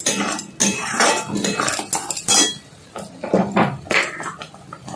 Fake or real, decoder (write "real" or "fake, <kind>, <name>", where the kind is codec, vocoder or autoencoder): real